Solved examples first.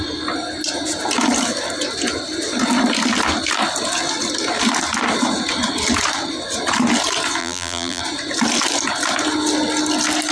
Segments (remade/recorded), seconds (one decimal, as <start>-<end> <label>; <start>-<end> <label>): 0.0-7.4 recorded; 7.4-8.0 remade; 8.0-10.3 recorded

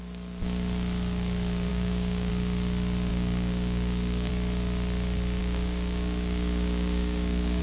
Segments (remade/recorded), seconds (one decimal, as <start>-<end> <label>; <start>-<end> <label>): 0.0-1.7 recorded; 1.7-2.3 remade; 2.3-3.1 recorded; 3.1-4.3 remade; 4.3-5.4 recorded; 5.4-7.6 remade

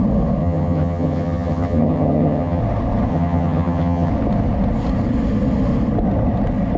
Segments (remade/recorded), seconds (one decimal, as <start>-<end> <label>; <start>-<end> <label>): 0.0-0.4 recorded; 0.4-2.6 remade; 2.6-3.1 recorded; 3.1-4.1 remade; 4.1-6.8 recorded

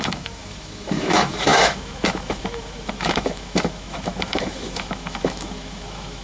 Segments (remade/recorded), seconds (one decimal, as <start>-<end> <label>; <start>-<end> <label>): 0.0-6.2 remade

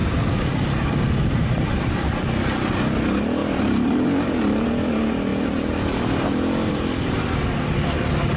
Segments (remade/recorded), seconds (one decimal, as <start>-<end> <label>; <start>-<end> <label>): 0.0-1.9 remade; 1.9-3.4 recorded; 3.4-4.7 remade; 4.7-8.4 recorded

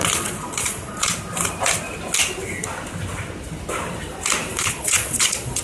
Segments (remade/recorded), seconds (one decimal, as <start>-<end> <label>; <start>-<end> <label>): 0.0-1.1 remade; 1.1-4.5 recorded; 4.5-5.6 remade